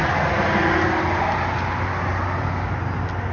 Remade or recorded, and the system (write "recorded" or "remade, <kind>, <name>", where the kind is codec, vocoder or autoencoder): recorded